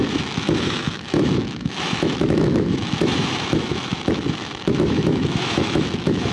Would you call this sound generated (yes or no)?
yes